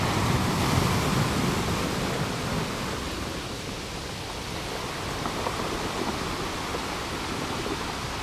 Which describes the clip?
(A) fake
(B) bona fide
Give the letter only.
B